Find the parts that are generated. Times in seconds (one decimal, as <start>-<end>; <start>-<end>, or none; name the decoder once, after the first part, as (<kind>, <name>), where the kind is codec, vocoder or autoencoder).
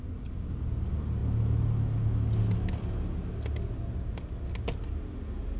none